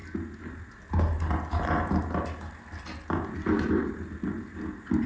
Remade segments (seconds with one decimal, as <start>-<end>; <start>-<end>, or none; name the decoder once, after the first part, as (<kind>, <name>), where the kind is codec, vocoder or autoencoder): none